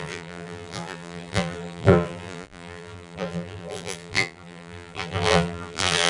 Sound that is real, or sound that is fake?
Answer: fake